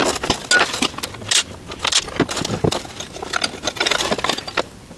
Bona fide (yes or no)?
yes